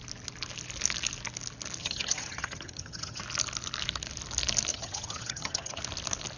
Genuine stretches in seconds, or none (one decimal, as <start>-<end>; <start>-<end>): 0.0-1.8; 3.2-4.7; 5.8-6.4